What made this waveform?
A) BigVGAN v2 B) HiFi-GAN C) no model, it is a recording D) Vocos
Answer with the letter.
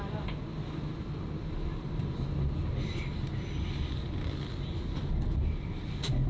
C